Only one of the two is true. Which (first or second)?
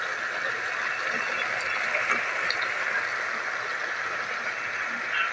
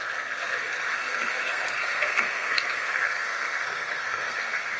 first